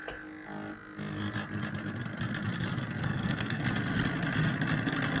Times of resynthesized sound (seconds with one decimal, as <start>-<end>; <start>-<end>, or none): 3.0-3.6